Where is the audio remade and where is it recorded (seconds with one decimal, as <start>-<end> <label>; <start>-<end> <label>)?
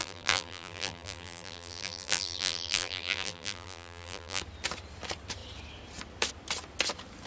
0.0-4.4 remade; 4.4-7.3 recorded